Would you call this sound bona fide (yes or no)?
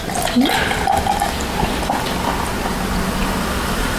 yes